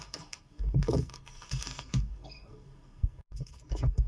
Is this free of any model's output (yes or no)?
no